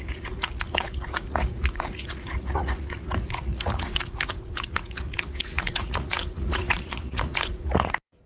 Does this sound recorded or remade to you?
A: remade